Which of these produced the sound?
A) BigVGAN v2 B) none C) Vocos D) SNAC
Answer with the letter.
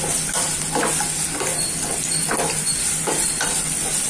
B